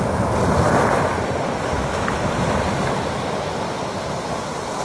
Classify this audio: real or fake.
real